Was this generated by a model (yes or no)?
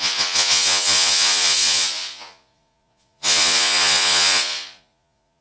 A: yes